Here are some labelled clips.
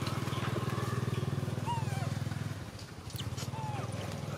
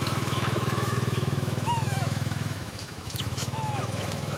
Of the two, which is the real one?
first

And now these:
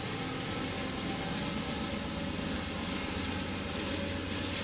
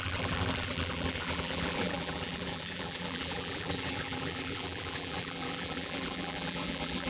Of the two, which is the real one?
first